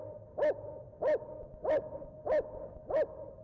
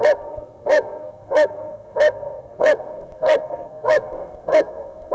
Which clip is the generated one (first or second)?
second